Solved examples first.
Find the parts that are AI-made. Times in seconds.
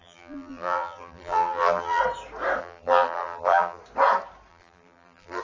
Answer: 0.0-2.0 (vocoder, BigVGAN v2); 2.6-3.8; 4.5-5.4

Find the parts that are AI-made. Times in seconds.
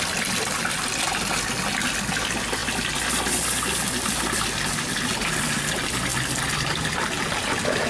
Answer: none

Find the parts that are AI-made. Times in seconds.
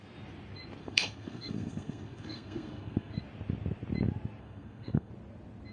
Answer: 0.8-3.2 (codec, SNAC); 4.4-5.1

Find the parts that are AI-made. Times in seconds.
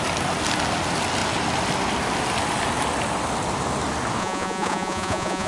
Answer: 4.2-5.5 (vocoder, Vocos)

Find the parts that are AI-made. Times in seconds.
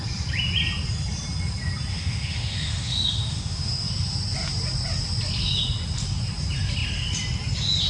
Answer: 1.9-3.9 (autoencoder, DAC-VAE)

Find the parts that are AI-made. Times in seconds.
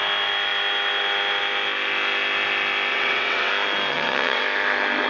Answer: 2.9-3.5 (vocoder, WaveNeXt); 3.9-4.4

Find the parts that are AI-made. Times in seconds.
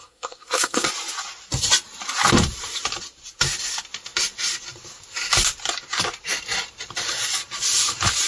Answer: 0.0-0.9 (codec, SNAC)